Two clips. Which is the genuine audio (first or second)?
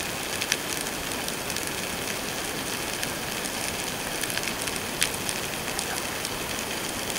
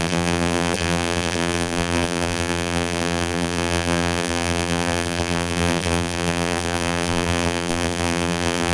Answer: first